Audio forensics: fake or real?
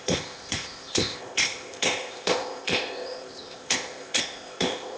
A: fake